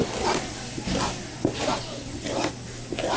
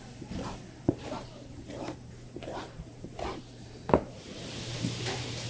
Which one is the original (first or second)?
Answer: first